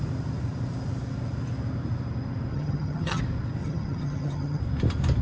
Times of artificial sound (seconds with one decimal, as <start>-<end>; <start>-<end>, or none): 2.5-3.2; 3.6-4.6